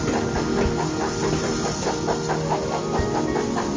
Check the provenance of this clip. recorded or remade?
recorded